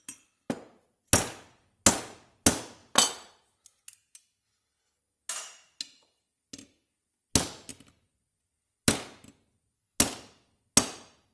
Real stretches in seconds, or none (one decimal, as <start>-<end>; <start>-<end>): 0.0-11.3